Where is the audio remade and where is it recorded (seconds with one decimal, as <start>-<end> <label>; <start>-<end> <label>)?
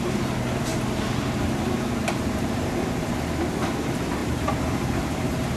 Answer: 0.0-0.7 recorded; 0.7-3.1 remade; 3.1-4.2 recorded; 4.2-5.6 remade